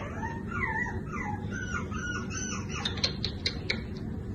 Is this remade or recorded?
recorded